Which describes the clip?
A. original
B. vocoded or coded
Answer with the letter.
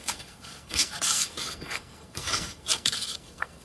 B